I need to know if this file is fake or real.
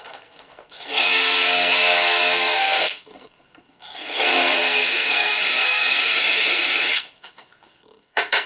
fake